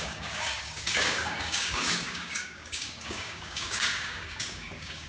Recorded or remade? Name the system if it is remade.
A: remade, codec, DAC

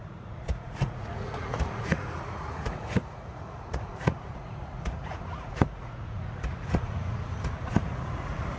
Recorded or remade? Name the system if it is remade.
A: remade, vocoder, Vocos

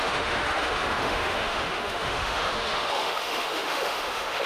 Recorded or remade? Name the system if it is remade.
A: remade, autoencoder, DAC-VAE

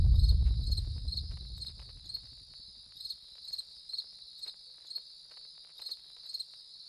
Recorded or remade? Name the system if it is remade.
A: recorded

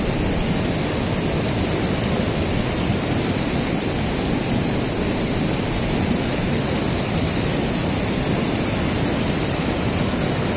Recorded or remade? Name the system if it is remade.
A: recorded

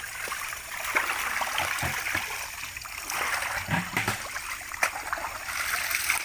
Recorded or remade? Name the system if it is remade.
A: recorded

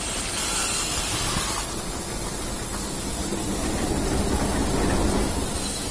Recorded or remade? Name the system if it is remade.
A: recorded